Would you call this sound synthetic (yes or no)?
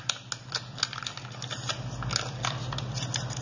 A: no